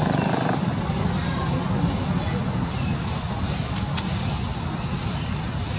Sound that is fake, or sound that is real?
real